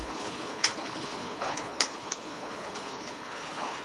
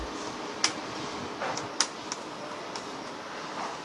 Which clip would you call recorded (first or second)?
second